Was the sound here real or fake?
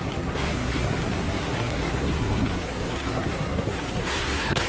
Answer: fake